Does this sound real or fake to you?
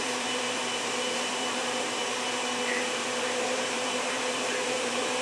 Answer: fake